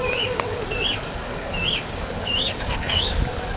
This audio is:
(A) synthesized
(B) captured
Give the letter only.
A